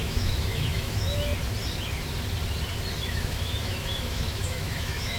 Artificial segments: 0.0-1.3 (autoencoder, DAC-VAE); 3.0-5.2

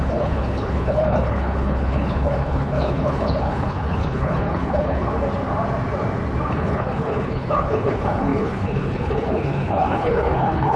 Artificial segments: 0.0-5.1 (codec, HILCodec); 6.5-10.8

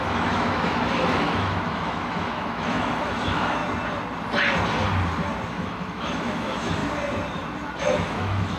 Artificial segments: 0.0-3.6 (autoencoder, DAC-VAE); 5.5-6.8; 7.8-8.6

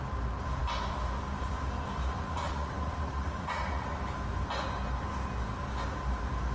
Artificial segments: 2.0-4.0 (vocoder, Vocos)

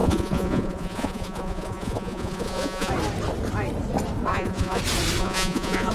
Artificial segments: 0.0-2.9 (vocoder, Vocos); 4.3-4.8; 5.2-5.9